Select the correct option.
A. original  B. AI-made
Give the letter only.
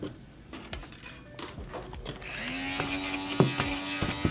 A